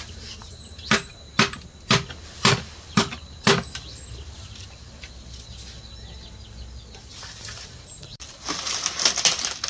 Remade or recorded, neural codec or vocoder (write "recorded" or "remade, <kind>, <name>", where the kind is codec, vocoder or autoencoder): recorded